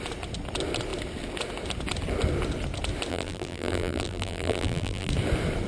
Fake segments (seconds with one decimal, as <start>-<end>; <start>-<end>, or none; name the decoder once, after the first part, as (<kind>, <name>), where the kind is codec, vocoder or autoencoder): 3.1-5.1 (vocoder, BigVGAN v2)